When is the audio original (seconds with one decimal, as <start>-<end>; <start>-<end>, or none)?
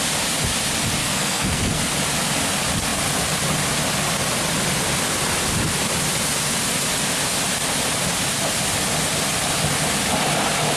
0.0-1.0; 1.8-10.8